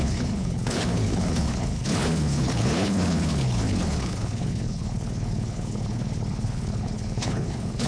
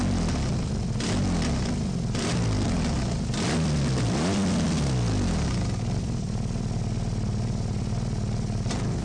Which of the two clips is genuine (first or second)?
second